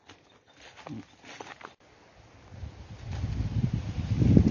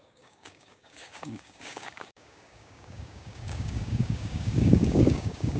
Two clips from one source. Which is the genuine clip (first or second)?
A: first